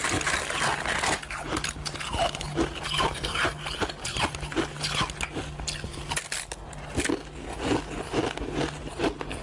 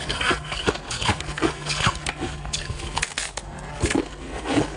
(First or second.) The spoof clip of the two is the second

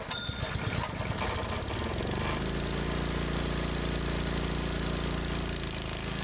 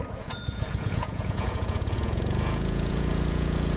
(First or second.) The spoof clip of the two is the second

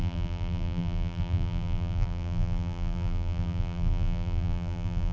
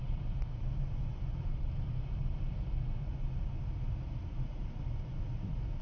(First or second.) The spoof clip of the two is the first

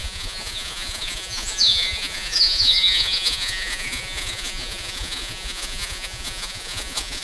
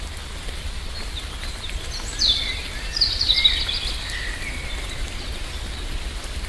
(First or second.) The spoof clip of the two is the first